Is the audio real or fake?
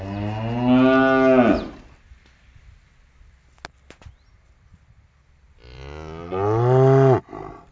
real